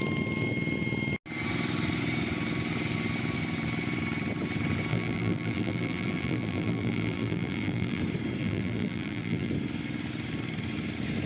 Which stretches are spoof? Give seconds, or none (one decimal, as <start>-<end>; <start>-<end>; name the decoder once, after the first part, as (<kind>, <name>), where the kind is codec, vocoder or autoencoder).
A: 4.9-8.0 (vocoder, BigVGAN v2); 8.4-9.5